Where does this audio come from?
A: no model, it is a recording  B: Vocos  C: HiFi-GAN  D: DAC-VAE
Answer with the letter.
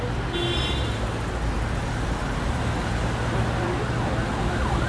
A